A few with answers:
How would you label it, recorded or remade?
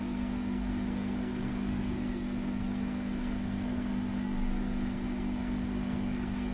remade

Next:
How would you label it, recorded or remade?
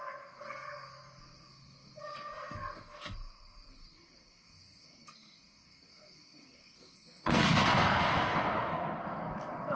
remade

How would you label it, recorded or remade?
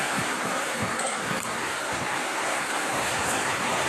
remade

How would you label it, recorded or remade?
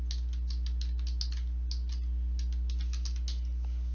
recorded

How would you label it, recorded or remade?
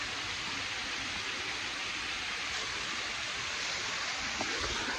recorded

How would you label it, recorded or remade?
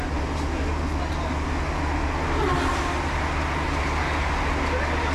recorded